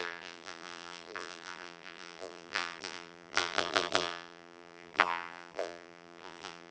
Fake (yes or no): yes